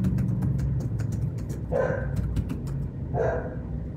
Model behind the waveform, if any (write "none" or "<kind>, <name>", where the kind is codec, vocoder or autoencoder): none